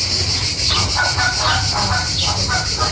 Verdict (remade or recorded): recorded